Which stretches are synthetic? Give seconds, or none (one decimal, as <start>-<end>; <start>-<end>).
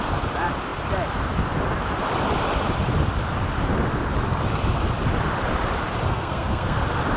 6.1-6.8